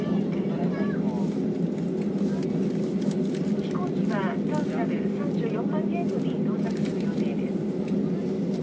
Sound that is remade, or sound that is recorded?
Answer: recorded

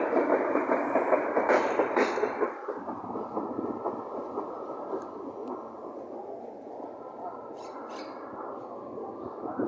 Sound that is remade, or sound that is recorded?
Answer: recorded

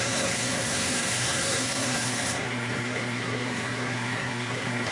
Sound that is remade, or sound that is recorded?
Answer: remade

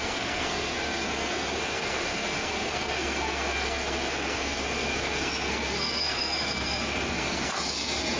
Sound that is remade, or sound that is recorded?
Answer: remade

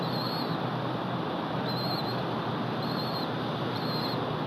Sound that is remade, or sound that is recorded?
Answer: recorded